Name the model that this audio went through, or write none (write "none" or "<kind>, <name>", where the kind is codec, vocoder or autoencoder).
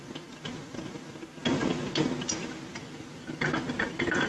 none